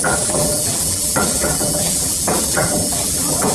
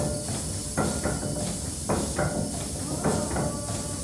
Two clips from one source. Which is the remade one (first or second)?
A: first